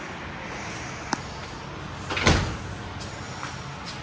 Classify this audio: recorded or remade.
recorded